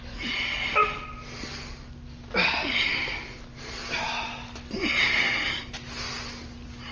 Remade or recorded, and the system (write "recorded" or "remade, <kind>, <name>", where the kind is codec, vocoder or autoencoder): recorded